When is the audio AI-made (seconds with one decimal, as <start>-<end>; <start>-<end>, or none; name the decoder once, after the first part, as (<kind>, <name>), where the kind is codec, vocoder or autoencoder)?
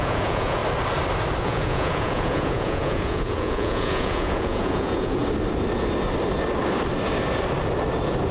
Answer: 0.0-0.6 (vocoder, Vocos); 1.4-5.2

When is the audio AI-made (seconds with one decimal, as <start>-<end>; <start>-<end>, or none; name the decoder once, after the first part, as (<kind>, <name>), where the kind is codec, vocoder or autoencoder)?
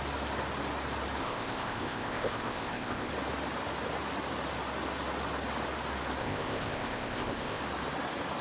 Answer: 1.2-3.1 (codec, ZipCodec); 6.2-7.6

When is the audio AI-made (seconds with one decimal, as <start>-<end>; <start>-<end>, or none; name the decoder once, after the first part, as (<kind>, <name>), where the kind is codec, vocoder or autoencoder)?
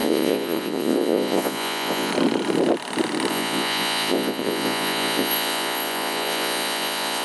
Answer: 0.0-2.1 (vocoder, Vocos); 3.3-7.2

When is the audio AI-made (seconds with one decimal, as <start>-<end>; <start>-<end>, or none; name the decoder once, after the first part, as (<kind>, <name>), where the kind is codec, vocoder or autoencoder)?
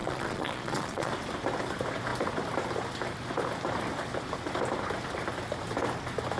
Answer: 0.0-1.1 (vocoder, Vocos)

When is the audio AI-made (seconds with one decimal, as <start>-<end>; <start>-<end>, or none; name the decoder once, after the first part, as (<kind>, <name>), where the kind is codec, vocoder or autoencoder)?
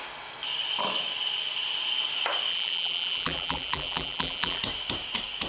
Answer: 2.5-4.6 (vocoder, BigVGAN v2)